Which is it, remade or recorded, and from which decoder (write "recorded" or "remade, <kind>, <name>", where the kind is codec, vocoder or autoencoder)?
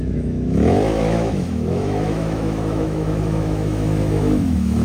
remade, autoencoder, DAC-VAE